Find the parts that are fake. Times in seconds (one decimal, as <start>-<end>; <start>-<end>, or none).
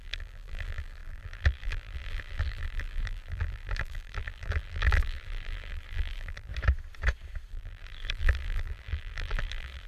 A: 0.0-6.5; 7.5-9.9